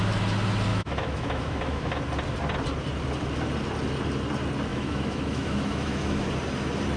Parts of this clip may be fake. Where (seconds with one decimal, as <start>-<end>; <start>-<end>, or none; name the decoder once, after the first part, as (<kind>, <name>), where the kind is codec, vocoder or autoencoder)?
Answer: 0.7-2.0 (autoencoder, DAC-VAE); 4.7-6.3